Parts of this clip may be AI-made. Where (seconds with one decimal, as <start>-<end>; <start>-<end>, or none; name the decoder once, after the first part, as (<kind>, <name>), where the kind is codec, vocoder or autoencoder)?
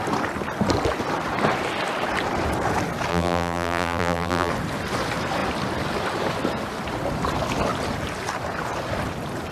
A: 3.1-4.5 (vocoder, BigVGAN v2)